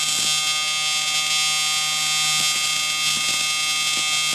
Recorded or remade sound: recorded